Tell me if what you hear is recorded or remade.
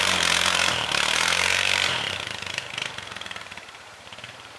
remade